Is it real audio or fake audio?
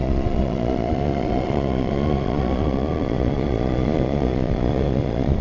fake